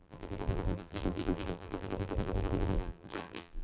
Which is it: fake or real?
fake